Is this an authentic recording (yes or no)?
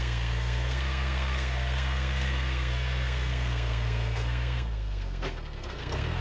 no